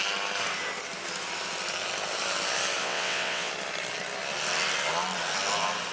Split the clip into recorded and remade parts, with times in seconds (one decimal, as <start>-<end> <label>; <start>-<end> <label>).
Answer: 0.0-2.8 recorded; 2.8-3.5 remade; 3.5-5.9 recorded